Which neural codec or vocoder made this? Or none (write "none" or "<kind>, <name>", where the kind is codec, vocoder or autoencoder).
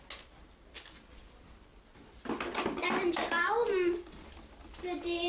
none